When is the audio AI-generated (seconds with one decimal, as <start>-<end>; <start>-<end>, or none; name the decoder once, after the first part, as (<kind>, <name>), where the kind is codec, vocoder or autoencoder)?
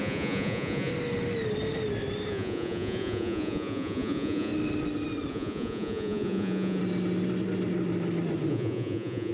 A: 0.0-0.9 (vocoder, Vocos); 2.3-4.5; 5.3-6.8; 8.5-9.3